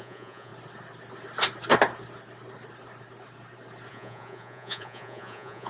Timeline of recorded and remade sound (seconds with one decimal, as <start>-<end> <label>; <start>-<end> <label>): 0.0-0.5 remade; 0.5-3.9 recorded; 3.9-5.7 remade